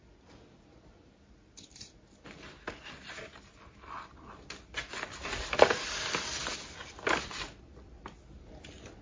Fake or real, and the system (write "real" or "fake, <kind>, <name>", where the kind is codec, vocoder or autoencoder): real